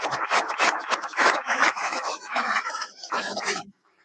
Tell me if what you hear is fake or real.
fake